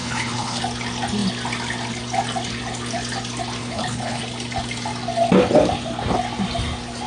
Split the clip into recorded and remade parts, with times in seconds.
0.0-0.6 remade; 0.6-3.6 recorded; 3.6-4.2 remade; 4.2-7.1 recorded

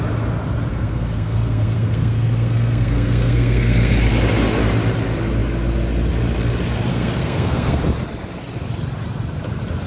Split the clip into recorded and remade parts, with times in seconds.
0.0-0.7 recorded; 0.7-3.9 remade; 3.9-6.9 recorded; 6.9-7.8 remade; 7.8-9.9 recorded

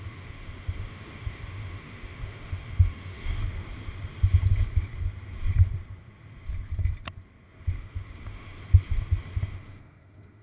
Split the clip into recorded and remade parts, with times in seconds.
0.0-3.4 remade; 3.4-7.7 recorded; 7.7-8.6 remade; 8.6-9.5 recorded; 9.5-10.4 remade

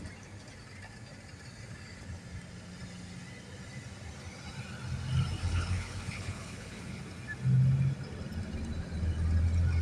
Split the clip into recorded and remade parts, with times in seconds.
0.0-5.4 recorded; 5.4-7.0 remade; 7.0-9.8 recorded

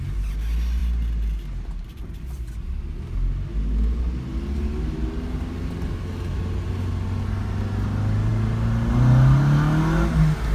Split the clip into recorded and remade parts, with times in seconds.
0.0-10.5 recorded

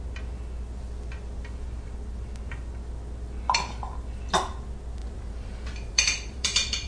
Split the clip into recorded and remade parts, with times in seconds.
0.0-5.0 recorded; 5.0-6.9 remade

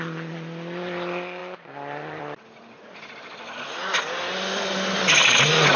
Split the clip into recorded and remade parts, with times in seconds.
0.0-5.8 recorded